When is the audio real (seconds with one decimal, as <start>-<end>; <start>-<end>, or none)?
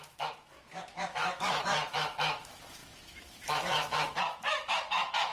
none